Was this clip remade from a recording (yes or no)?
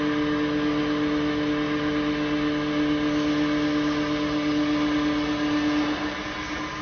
no